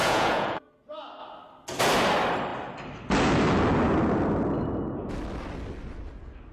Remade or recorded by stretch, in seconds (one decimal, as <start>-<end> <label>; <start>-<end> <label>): 0.0-0.7 remade; 0.7-6.5 recorded